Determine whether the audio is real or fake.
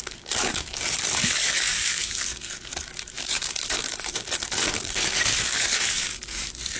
fake